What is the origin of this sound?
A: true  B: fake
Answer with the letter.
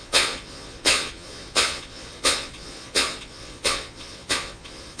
B